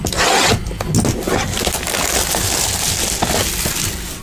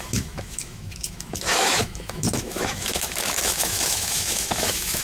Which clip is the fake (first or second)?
second